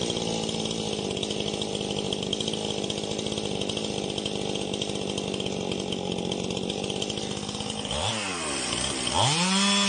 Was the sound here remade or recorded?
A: recorded